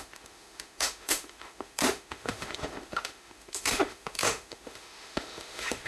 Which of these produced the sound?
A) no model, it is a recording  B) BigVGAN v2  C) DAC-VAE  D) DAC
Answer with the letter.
C